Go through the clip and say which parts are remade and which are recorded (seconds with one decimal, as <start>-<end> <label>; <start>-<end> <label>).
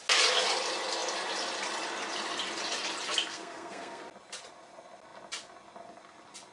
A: 0.0-3.3 recorded; 3.3-4.0 remade; 4.0-6.5 recorded